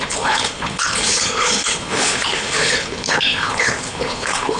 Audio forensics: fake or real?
fake